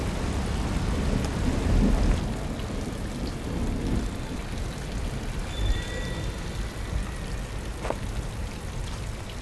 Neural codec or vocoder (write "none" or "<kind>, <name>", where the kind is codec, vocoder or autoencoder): none